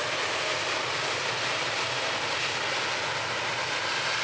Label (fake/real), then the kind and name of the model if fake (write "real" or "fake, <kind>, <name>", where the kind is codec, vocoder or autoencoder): real